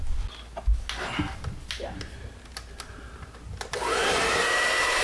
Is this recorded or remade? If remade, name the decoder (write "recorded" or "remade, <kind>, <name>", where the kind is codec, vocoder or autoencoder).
recorded